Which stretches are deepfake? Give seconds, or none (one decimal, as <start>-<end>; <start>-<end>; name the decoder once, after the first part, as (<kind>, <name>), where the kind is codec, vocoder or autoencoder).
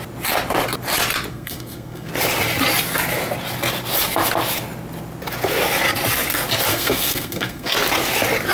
1.3-2.1 (codec, SNAC); 6.7-7.7